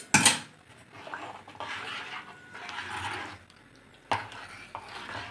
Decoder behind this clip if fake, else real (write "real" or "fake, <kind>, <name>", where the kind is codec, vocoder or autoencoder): real